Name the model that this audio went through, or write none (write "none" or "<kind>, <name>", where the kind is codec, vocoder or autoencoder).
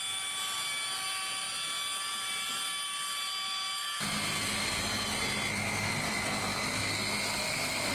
none